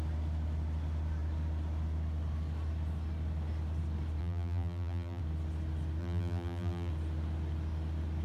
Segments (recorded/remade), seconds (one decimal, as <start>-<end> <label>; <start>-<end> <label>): 0.0-4.2 recorded; 4.2-5.2 remade; 5.2-6.0 recorded; 6.0-6.9 remade; 6.9-8.2 recorded